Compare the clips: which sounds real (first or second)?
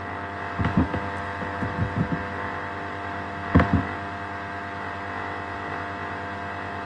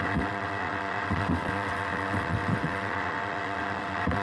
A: first